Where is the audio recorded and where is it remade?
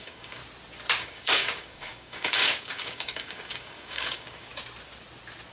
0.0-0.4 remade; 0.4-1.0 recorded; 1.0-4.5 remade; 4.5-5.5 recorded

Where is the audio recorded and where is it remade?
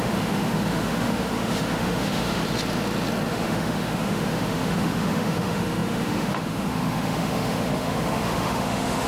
0.0-2.4 remade; 2.4-3.3 recorded; 3.3-9.1 remade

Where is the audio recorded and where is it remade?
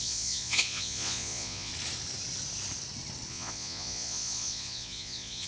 0.0-1.7 remade; 1.7-3.3 recorded; 3.3-5.5 remade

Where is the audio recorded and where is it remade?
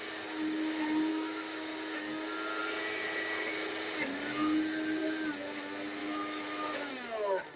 0.0-1.1 recorded; 1.1-1.7 remade; 1.7-6.0 recorded; 6.0-6.9 remade; 6.9-7.6 recorded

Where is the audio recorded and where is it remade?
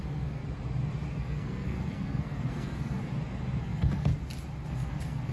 0.0-0.4 remade; 0.4-1.2 recorded; 1.2-3.0 remade; 3.0-3.6 recorded; 3.6-4.1 remade; 4.1-4.7 recorded; 4.7-5.3 remade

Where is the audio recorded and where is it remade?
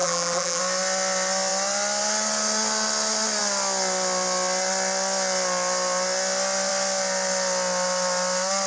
0.0-0.6 remade; 0.6-8.7 recorded